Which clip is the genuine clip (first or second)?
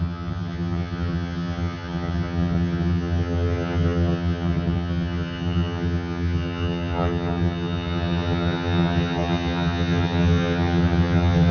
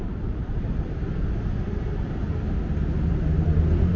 second